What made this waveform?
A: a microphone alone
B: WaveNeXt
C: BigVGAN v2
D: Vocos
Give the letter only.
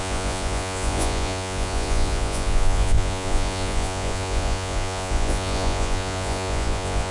D